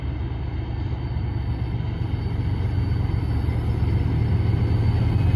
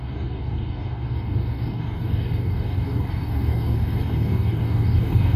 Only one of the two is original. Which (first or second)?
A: first